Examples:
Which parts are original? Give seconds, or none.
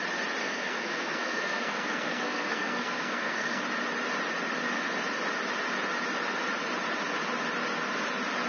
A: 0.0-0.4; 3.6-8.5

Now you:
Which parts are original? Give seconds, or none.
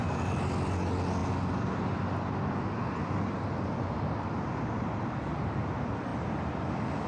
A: 0.0-7.1